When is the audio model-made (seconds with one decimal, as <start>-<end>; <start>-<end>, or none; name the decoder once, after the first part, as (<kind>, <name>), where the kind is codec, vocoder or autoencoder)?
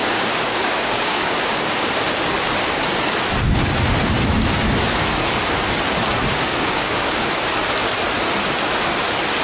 0.0-1.9 (codec, DAC); 6.3-7.2